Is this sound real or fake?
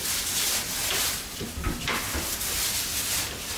real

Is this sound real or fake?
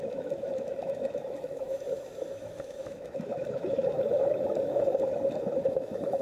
fake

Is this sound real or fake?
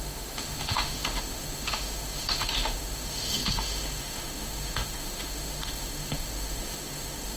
fake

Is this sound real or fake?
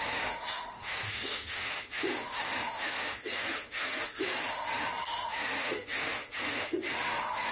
fake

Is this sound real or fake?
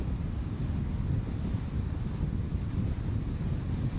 real